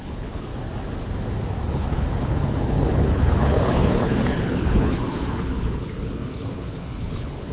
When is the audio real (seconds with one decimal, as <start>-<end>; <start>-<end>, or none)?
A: 0.5-1.7